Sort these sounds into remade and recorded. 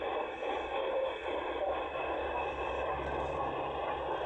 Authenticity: recorded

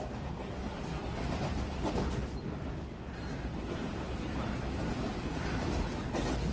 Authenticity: recorded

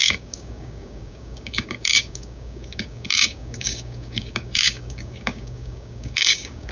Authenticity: remade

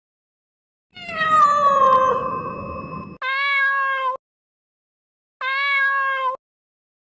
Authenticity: recorded